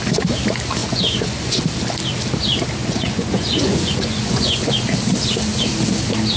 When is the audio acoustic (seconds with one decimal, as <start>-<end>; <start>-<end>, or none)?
0.0-0.8; 1.6-2.8; 4.6-6.4

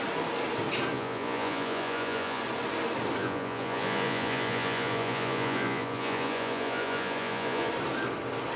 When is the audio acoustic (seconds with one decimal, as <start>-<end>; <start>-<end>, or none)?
0.0-0.9; 2.4-3.2; 7.7-8.6

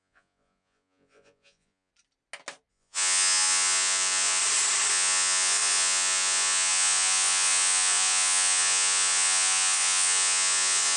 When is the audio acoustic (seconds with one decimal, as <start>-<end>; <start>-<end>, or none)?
1.9-2.7; 4.4-4.9

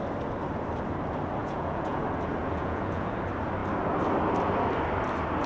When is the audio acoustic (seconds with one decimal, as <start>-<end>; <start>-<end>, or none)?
0.0-1.4; 2.0-2.4; 3.1-5.5

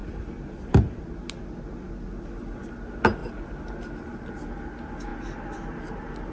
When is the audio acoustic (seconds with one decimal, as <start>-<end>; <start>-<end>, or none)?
0.0-6.3

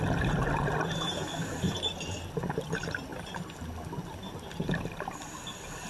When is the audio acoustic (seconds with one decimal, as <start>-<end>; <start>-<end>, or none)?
0.0-5.9

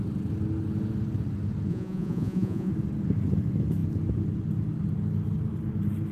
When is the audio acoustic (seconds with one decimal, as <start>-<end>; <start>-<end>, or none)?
0.0-1.7; 2.7-6.1